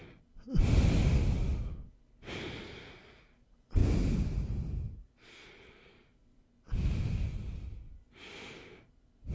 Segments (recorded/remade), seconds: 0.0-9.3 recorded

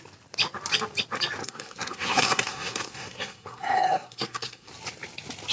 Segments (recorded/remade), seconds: 0.0-1.4 recorded; 1.4-4.7 remade; 4.7-5.5 recorded

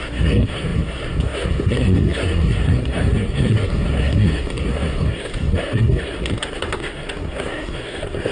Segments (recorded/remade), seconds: 0.0-8.3 remade

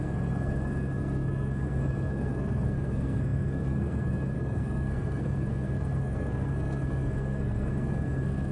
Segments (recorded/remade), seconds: 0.0-8.5 remade

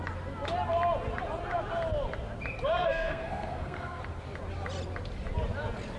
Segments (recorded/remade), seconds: 0.0-2.8 recorded; 2.8-4.0 remade; 4.0-6.0 recorded

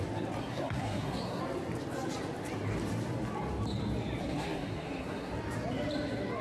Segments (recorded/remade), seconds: 0.0-0.4 recorded; 0.4-1.4 remade; 1.4-4.2 recorded; 4.2-5.3 remade; 5.3-6.4 recorded